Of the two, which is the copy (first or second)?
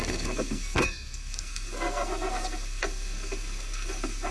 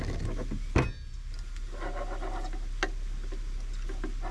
first